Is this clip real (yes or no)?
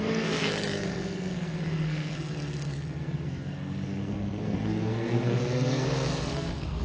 no